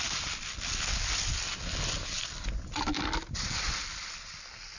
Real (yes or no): yes